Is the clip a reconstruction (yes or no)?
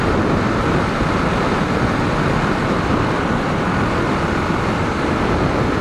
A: no